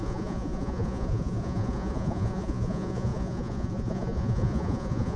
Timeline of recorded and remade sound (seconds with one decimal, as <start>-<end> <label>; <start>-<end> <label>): 0.0-5.2 remade